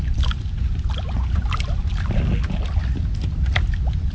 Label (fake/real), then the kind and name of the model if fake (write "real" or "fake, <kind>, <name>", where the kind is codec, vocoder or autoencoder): real